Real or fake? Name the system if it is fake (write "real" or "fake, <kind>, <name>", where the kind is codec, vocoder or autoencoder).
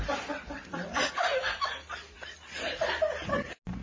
real